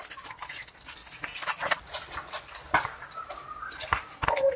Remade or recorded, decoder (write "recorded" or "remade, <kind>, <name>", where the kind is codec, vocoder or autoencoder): recorded